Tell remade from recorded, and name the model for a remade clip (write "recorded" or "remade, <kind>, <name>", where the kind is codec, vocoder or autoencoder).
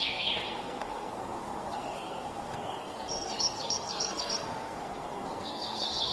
remade, codec, SNAC